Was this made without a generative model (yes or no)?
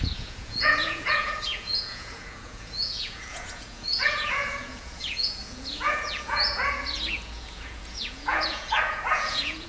no